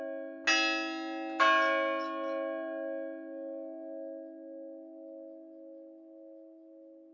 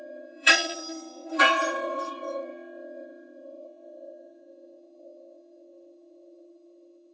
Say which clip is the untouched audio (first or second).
first